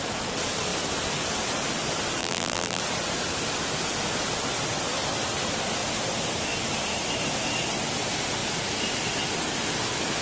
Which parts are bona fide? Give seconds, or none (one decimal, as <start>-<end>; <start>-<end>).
0.0-2.2; 2.8-10.2